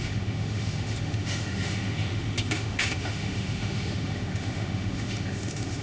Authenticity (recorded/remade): remade